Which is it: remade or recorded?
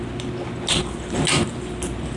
recorded